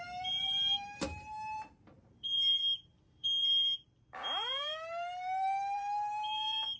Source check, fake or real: fake